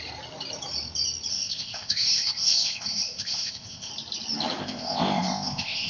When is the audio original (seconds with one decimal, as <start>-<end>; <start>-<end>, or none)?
0.0-1.3; 3.9-4.6